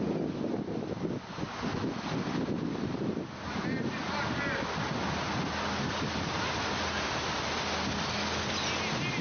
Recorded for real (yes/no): yes